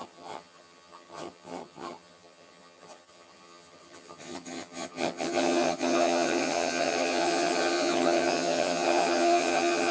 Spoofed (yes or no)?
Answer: yes